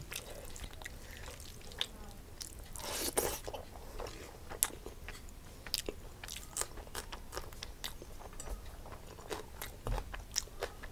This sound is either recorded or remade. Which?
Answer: recorded